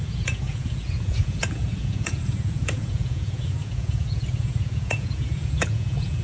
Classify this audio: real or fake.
fake